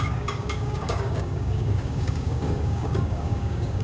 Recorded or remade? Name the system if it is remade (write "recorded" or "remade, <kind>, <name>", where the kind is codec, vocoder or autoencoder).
remade, codec, DAC